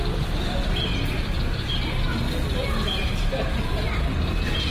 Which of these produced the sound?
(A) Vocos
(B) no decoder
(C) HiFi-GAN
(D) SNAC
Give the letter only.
B